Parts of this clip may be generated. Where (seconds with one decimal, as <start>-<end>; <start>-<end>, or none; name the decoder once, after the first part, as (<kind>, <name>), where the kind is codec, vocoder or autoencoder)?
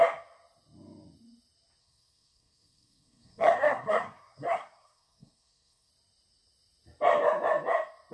1.8-5.9 (codec, SNAC)